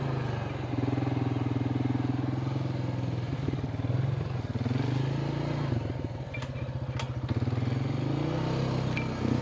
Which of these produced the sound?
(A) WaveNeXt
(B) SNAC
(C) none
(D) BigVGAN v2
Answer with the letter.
C